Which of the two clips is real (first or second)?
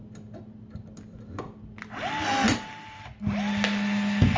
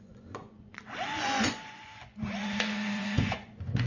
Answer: first